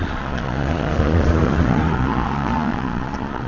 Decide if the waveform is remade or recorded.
remade